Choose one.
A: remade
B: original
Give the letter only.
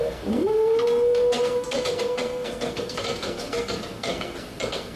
A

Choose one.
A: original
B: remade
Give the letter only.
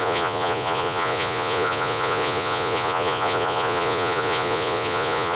B